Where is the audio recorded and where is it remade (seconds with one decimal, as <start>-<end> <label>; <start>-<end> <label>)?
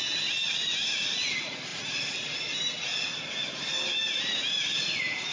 0.0-5.3 recorded